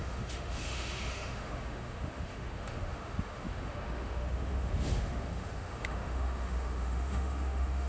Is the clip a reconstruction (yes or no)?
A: yes